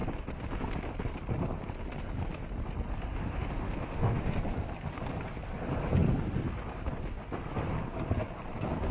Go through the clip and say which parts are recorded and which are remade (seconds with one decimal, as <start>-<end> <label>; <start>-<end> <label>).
0.0-3.1 recorded; 3.1-4.2 remade; 4.2-8.9 recorded